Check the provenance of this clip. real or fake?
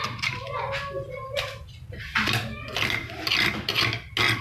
real